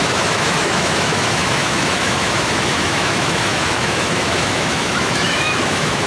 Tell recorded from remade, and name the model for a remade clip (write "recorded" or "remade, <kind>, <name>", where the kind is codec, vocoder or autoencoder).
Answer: remade, autoencoder, DAC-VAE